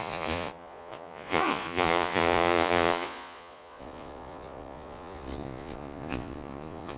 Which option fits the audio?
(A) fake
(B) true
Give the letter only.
A